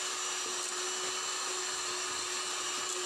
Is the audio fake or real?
real